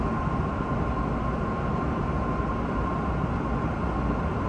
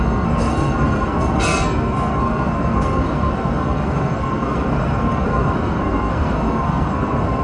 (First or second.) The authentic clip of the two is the first